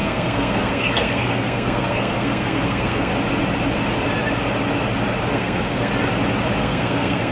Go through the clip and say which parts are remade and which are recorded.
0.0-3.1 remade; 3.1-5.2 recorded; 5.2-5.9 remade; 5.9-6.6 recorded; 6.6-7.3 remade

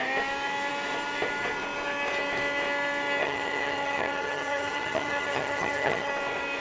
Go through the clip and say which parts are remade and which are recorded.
0.0-3.2 recorded; 3.2-6.1 remade; 6.1-6.6 recorded

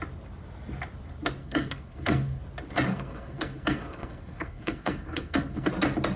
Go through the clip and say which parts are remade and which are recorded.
0.0-1.4 recorded; 1.4-2.4 remade; 2.4-2.9 recorded; 2.9-5.7 remade; 5.7-6.2 recorded